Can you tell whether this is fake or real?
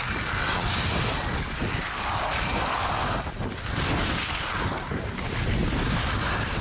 real